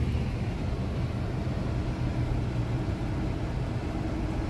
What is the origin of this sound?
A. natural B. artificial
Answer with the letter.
A